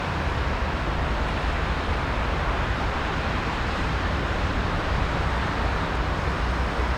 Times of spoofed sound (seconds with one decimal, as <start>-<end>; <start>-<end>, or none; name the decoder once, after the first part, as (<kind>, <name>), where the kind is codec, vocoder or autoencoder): 2.7-5.0 (vocoder, BigVGAN v2); 5.7-6.3